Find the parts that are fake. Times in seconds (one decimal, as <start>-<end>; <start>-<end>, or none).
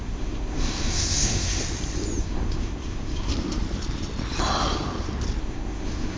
0.0-1.6; 2.2-3.3; 5.4-6.2